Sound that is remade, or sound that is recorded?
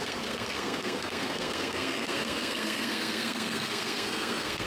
remade